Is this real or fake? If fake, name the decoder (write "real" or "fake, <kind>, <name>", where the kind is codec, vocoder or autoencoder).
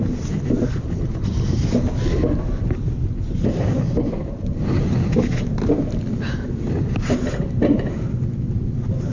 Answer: real